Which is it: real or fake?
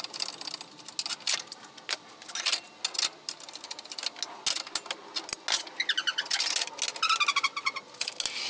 real